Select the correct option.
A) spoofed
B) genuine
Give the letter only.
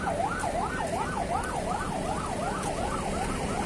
B